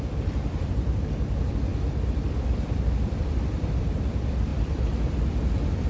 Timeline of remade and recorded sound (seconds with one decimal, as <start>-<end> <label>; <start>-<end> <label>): 0.0-5.9 remade